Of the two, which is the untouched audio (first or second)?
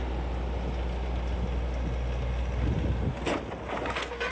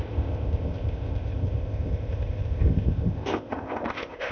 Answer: first